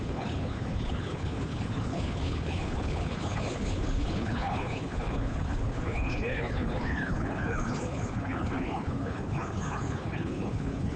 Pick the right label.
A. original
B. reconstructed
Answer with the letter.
B